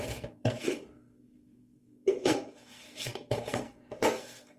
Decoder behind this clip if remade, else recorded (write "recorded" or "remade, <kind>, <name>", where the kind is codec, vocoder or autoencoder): remade, codec, SNAC